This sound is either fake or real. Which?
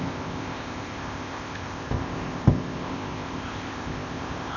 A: fake